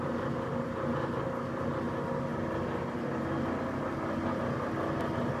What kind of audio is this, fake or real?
real